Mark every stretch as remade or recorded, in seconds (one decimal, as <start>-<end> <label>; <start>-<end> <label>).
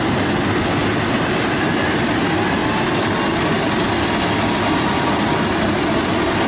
0.0-6.5 recorded